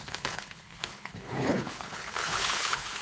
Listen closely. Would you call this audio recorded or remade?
remade